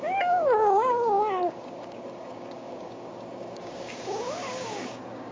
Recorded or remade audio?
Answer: remade